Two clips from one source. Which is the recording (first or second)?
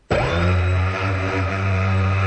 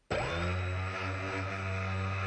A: second